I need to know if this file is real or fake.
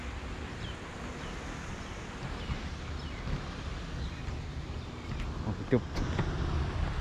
real